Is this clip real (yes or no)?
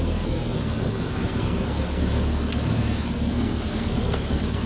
no